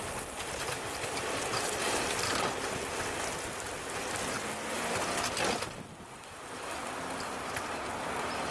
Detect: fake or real real